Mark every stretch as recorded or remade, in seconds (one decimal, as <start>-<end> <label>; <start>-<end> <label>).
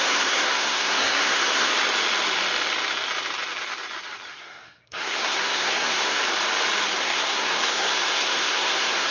0.0-1.7 remade; 1.7-4.3 recorded; 4.3-6.2 remade; 6.2-7.0 recorded; 7.0-9.1 remade